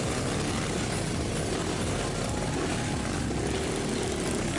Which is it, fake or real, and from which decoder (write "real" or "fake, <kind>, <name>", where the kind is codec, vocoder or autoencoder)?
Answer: real